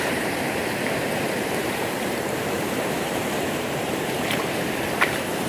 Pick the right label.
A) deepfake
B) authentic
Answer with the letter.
A